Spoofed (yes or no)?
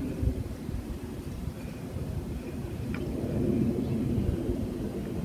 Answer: yes